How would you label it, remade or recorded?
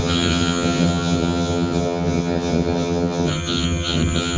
remade